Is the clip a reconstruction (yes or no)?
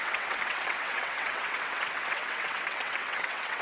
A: yes